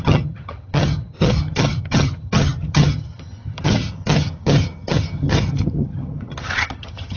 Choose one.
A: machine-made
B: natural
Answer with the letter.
A